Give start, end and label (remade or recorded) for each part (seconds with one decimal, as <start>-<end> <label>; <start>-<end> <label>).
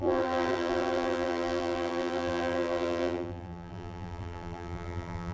0.0-5.3 remade